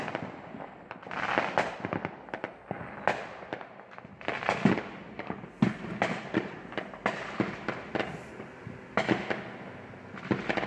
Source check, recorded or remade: recorded